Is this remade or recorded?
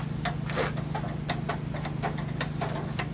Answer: recorded